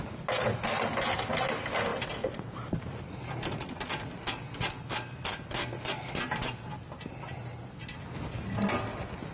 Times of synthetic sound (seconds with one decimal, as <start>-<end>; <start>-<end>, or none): none